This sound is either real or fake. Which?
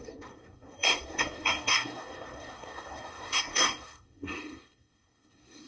fake